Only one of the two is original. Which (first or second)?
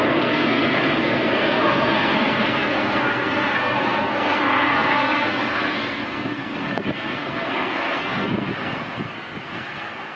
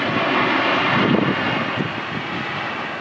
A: second